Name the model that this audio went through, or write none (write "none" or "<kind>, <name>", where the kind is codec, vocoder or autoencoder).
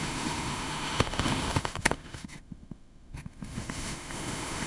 autoencoder, DAC-VAE